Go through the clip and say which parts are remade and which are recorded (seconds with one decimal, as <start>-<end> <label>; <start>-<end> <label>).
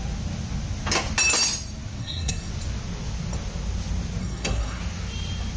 0.0-2.0 recorded; 2.0-2.5 remade; 2.5-4.2 recorded; 4.2-4.8 remade; 4.8-5.6 recorded